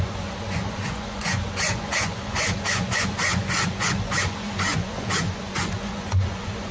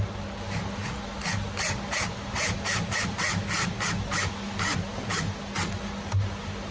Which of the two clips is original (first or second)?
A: second